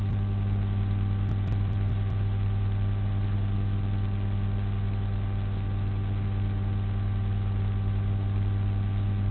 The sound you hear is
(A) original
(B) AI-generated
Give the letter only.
A